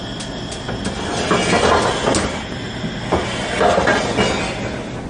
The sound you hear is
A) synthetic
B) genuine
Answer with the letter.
B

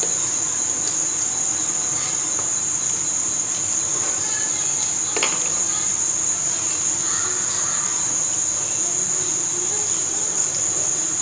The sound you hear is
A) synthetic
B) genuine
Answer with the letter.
B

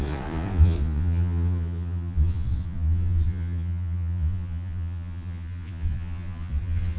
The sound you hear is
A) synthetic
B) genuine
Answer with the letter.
A